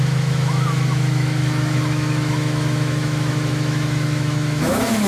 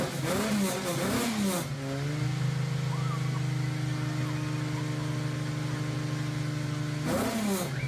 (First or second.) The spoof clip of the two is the first